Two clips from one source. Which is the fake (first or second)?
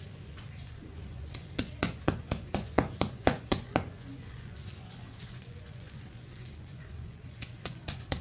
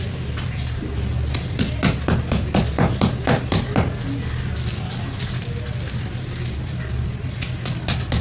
first